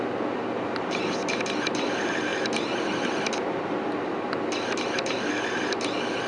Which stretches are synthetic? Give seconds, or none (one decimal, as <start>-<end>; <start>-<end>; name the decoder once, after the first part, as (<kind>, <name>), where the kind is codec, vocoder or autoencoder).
none